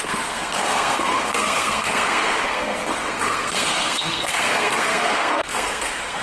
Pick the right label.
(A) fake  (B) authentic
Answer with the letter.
A